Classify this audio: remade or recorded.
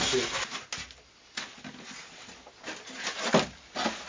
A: recorded